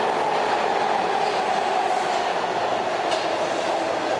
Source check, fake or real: real